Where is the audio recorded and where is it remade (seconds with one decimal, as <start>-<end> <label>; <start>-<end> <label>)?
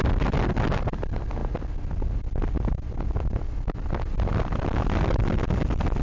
0.0-6.0 recorded